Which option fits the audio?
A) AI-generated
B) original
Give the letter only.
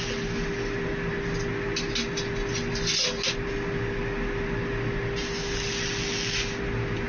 B